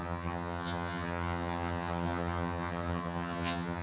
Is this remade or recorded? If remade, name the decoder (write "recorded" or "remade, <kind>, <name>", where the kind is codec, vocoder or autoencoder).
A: remade, vocoder, HiFi-GAN